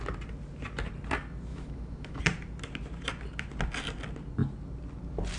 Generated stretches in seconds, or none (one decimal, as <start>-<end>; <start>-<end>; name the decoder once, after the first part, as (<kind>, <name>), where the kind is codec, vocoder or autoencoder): 1.5-2.2 (autoencoder, DAC-VAE)